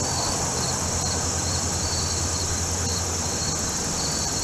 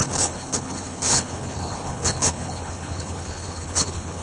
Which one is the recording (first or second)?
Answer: first